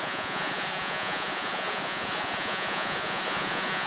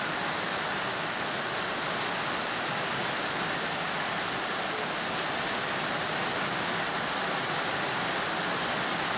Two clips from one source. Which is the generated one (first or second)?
first